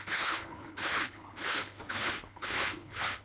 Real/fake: fake